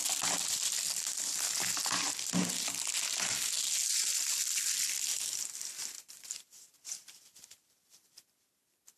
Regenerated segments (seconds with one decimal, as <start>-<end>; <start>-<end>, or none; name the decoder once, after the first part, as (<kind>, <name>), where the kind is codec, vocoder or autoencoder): 0.0-0.8 (vocoder, BigVGAN v2); 3.8-6.5